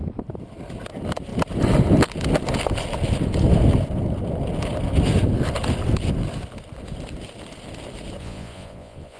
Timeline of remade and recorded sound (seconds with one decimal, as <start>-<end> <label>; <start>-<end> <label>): 0.0-8.2 recorded; 8.2-9.2 remade